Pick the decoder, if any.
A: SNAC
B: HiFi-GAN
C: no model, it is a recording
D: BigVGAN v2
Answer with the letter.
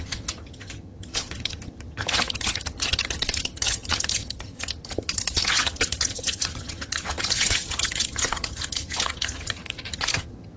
B